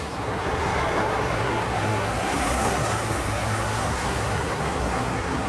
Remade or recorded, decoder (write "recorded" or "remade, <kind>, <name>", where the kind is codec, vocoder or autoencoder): remade, codec, SNAC